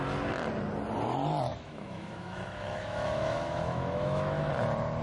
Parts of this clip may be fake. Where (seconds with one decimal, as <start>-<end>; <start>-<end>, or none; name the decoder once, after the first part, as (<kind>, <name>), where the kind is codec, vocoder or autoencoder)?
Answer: 1.5-4.5 (autoencoder, DAC-VAE)